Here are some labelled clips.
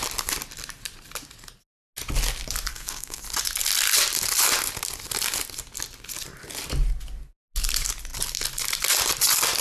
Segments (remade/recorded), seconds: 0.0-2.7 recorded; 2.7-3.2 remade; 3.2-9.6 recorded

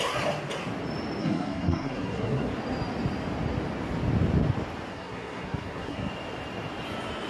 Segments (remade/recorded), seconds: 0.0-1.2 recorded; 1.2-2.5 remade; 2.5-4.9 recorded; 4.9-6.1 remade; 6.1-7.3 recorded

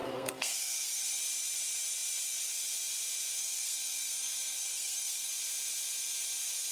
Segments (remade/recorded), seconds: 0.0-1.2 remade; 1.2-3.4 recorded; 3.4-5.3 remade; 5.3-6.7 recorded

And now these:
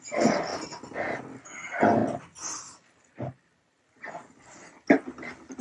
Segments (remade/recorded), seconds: 0.0-5.6 recorded

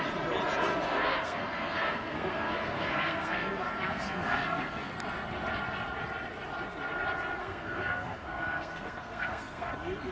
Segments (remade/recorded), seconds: 0.0-0.7 recorded; 0.7-4.9 remade; 4.9-7.4 recorded; 7.4-9.7 remade; 9.7-10.1 recorded

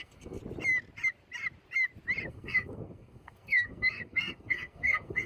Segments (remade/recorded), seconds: 0.0-0.4 remade; 0.4-2.3 recorded; 2.3-5.3 remade